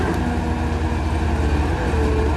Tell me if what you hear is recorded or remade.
recorded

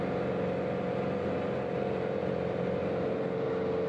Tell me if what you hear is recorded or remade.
recorded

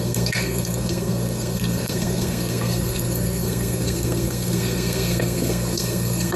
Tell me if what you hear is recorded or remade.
remade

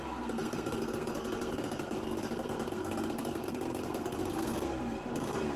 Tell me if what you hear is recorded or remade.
remade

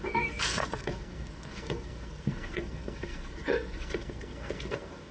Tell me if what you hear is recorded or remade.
remade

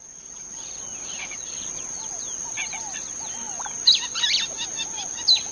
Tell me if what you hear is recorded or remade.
recorded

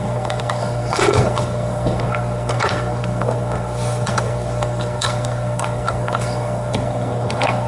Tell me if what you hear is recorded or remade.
remade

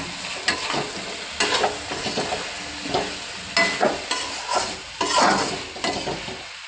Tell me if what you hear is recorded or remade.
recorded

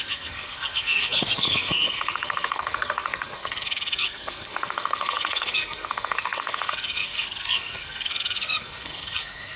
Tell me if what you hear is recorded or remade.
remade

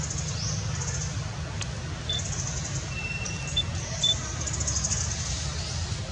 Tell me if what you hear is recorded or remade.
recorded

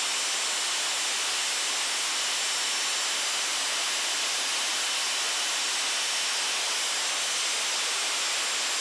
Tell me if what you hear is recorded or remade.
recorded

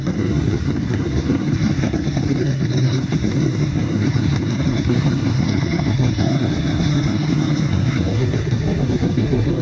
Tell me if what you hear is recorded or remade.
remade